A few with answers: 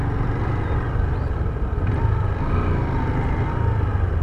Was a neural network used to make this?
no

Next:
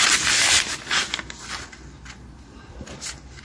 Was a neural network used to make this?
no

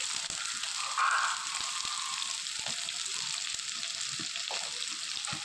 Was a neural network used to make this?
no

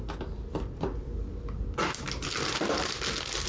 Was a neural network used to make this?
no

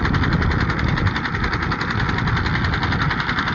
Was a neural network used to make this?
no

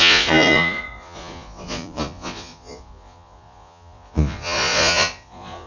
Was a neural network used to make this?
yes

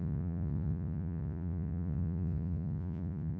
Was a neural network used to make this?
yes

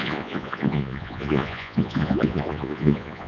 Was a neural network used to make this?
yes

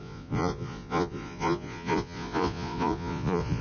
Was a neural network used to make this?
yes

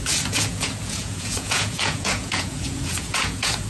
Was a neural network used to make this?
yes